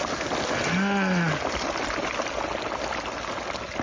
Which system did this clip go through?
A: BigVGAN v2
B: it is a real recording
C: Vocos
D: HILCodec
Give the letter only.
B